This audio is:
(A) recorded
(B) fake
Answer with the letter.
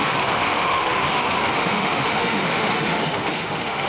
B